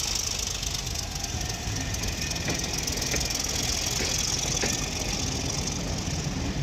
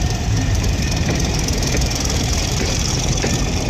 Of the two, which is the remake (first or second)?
second